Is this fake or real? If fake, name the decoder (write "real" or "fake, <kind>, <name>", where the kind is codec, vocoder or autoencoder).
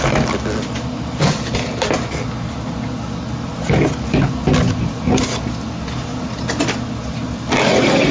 real